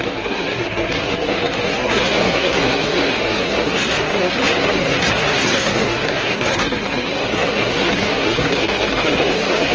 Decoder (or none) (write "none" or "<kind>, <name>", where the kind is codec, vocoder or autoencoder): codec, SNAC